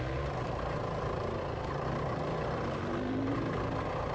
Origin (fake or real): real